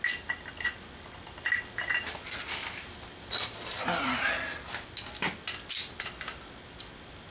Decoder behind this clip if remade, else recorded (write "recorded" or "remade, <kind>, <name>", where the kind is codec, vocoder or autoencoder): recorded